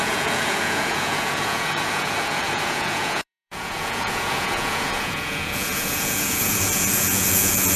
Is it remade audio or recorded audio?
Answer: remade